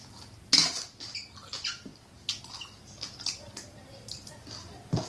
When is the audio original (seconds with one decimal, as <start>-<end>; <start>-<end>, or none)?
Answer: 0.0-5.1